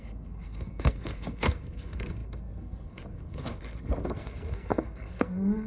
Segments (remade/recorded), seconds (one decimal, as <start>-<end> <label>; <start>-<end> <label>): 0.0-5.7 remade